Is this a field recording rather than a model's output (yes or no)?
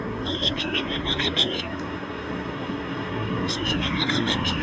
no